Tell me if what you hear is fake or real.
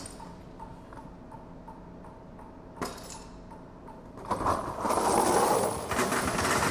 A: real